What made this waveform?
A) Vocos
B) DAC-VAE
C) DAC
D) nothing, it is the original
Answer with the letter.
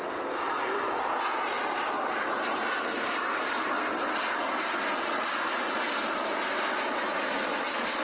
D